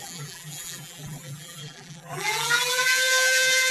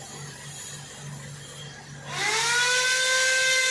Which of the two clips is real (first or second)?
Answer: second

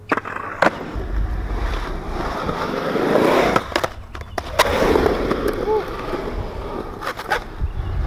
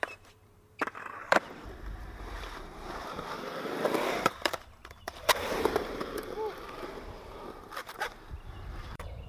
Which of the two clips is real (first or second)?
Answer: first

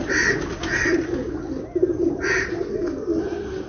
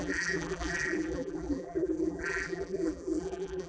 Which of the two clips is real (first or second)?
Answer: first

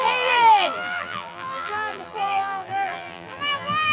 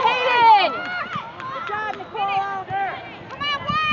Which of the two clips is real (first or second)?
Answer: second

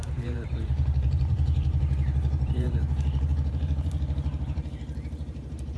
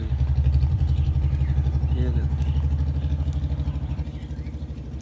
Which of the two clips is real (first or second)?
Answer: second